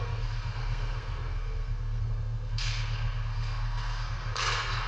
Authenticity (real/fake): fake